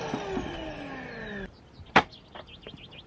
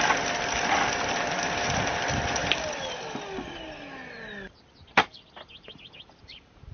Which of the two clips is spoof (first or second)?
second